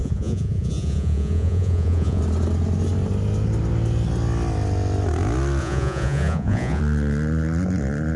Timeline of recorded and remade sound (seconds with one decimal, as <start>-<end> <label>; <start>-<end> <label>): 0.0-2.2 remade; 2.2-5.6 recorded; 5.6-6.8 remade; 6.8-8.2 recorded